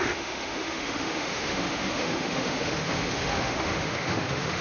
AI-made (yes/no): yes